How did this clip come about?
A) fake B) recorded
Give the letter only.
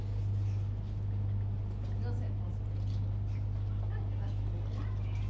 B